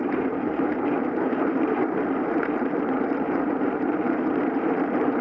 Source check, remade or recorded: remade